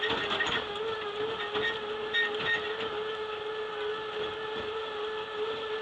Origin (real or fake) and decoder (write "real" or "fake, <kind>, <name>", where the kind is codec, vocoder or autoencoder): real